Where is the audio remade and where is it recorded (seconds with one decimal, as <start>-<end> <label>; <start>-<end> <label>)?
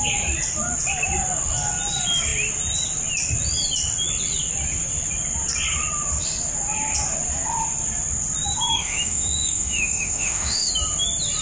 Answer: 0.0-8.7 recorded; 8.7-10.7 remade; 10.7-11.4 recorded